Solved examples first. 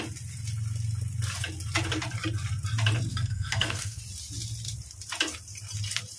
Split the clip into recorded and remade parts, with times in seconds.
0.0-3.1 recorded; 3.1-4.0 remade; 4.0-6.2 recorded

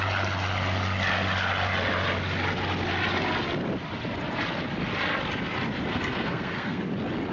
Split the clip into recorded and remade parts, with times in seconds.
0.0-5.9 recorded; 5.9-6.8 remade; 6.8-7.3 recorded

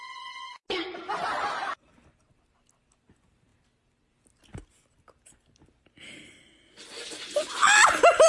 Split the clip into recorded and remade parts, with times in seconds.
0.0-8.3 recorded

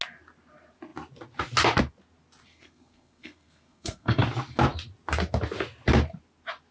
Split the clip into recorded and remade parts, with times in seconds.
0.0-2.5 recorded; 2.5-4.2 remade; 4.2-6.7 recorded

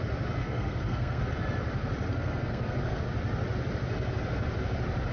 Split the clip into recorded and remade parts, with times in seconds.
0.0-0.4 recorded; 0.4-1.2 remade; 1.2-2.1 recorded; 2.1-3.0 remade; 3.0-5.1 recorded

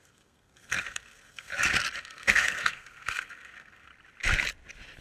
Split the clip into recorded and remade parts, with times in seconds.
0.0-1.5 remade; 1.5-2.0 recorded; 2.0-3.9 remade; 3.9-5.0 recorded

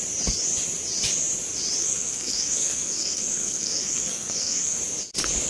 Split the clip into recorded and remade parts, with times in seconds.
0.0-1.8 recorded; 1.8-4.8 remade; 4.8-5.5 recorded